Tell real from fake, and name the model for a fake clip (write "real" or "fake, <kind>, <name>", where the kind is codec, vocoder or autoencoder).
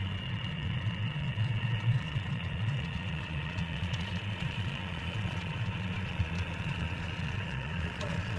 fake, vocoder, Vocos